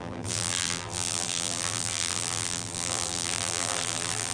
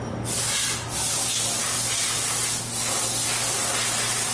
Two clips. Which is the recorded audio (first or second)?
second